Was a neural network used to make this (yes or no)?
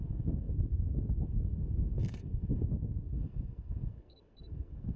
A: yes